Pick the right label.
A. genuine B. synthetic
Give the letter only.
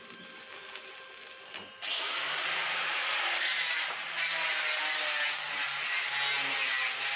A